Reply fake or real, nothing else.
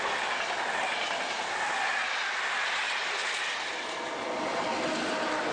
real